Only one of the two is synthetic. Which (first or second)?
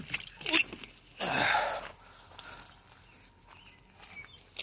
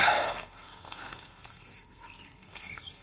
second